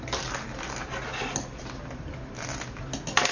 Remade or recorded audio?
recorded